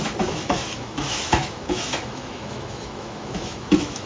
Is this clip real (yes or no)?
no